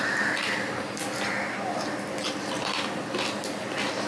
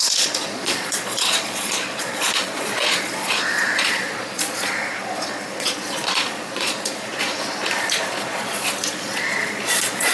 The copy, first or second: second